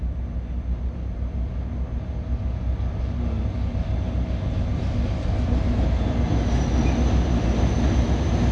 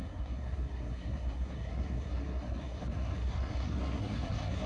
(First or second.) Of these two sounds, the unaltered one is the first